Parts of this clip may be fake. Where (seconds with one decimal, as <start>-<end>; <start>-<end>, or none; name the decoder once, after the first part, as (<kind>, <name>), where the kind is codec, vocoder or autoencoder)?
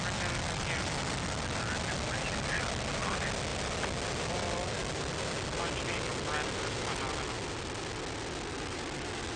none